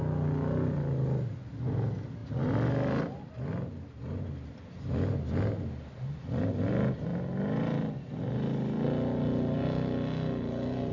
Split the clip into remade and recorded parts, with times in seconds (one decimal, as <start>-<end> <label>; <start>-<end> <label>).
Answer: 0.0-10.9 recorded